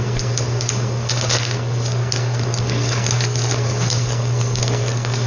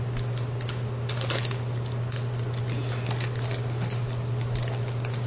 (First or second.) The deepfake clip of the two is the first